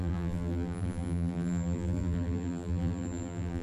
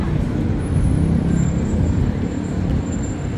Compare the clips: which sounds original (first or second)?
second